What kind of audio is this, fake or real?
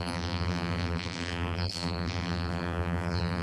fake